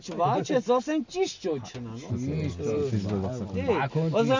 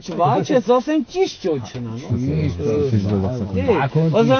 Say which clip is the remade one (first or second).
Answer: second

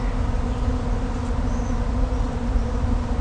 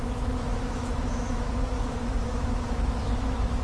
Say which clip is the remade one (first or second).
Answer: second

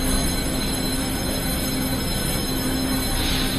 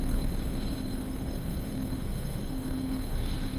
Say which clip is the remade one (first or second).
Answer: second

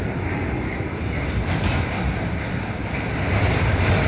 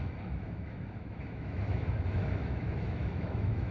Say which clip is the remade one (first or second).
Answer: second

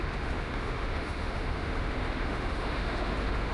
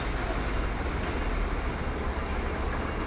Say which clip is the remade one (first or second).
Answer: first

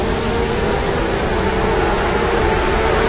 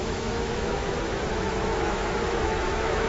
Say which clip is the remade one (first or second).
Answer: second